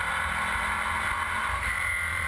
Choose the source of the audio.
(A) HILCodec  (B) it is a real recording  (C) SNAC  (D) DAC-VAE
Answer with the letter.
B